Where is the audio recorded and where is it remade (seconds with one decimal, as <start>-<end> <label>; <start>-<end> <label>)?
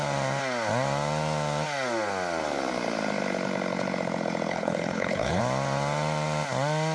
0.0-4.5 recorded; 4.5-5.4 remade; 5.4-6.9 recorded